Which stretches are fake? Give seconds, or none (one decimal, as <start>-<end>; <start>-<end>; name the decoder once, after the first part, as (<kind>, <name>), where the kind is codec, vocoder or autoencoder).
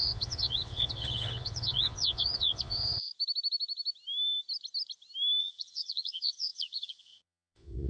0.0-3.1 (vocoder, Vocos); 5.4-7.9